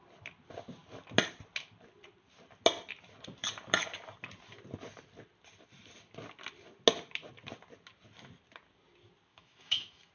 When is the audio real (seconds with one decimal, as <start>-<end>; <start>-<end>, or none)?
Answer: 0.0-9.3